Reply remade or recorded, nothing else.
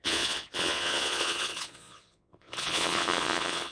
remade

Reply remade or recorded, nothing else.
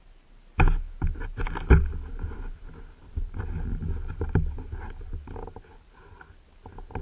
recorded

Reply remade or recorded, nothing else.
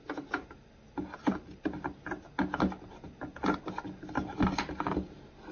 recorded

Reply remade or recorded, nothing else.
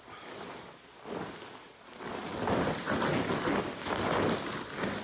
recorded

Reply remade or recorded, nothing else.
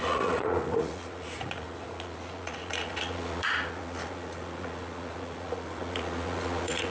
remade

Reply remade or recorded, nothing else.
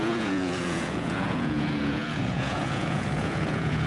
remade